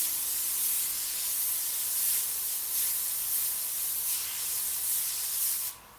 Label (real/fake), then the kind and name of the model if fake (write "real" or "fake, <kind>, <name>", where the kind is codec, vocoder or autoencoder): real